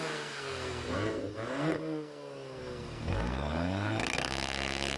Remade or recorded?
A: remade